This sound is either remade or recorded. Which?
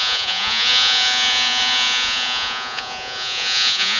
remade